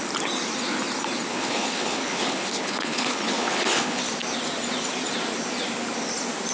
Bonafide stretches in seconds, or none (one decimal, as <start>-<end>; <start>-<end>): 0.0-1.3; 4.0-6.5